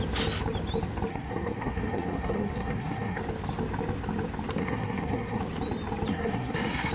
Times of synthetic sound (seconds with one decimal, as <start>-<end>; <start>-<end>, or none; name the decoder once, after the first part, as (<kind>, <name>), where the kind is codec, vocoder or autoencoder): 1.1-3.2 (codec, SNAC); 4.6-5.4; 6.1-6.9